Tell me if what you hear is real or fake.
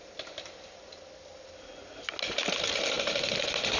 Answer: real